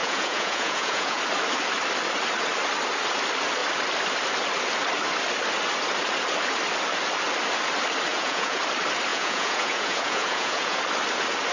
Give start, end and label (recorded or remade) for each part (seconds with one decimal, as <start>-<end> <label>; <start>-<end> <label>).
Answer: 0.0-1.2 remade; 1.2-8.1 recorded; 8.1-8.6 remade; 8.6-9.1 recorded; 9.1-10.8 remade; 10.8-11.5 recorded